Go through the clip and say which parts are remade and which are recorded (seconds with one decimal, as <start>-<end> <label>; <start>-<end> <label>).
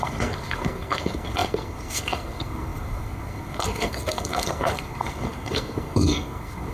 0.0-6.7 remade